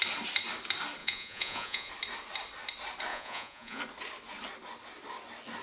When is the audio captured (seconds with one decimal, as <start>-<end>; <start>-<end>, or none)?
0.0-1.0; 1.9-3.1; 3.8-5.6